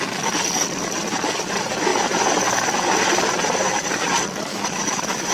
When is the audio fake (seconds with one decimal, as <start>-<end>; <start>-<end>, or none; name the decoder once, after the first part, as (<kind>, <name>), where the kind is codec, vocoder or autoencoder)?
4.5-5.3 (autoencoder, DAC-VAE)

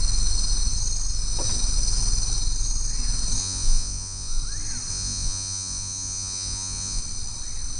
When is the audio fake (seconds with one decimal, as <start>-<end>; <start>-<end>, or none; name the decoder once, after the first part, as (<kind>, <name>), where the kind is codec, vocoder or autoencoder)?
3.4-4.4 (vocoder, Vocos); 4.9-7.0

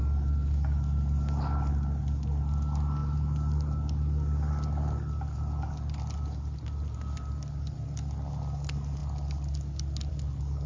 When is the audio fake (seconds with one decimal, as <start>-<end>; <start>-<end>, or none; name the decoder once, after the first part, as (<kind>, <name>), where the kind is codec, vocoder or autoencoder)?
none

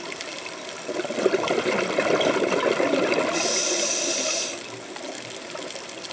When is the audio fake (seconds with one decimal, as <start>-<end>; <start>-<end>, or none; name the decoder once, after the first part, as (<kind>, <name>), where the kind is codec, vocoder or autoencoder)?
none

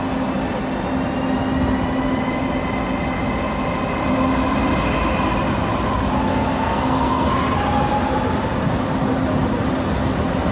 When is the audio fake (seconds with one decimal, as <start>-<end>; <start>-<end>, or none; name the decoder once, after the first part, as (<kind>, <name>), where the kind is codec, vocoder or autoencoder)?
6.3-7.3 (codec, SNAC)

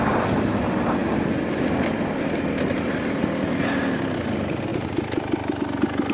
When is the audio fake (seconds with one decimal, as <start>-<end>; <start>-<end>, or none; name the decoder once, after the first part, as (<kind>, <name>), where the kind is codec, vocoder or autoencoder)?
none